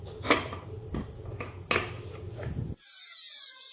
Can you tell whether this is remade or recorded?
recorded